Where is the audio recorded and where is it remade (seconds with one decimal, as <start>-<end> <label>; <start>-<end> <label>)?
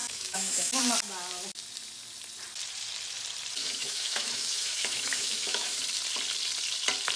0.0-0.8 remade; 0.8-3.6 recorded; 3.6-5.8 remade; 5.8-7.2 recorded